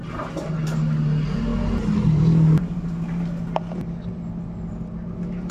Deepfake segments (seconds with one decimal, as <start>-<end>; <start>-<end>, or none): none